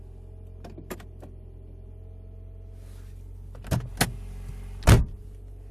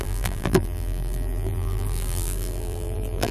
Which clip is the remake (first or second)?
second